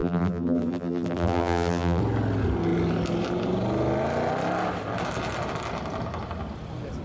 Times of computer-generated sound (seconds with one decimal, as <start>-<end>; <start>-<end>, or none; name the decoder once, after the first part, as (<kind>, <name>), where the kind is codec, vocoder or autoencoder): 0.0-2.0 (vocoder, BigVGAN v2)